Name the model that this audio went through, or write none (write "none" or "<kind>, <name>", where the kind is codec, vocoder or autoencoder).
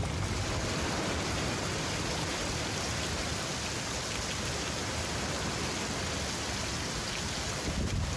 none